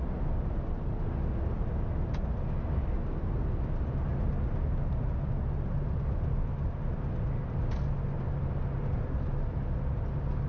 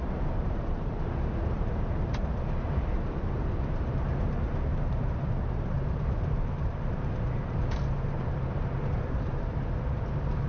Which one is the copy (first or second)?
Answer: second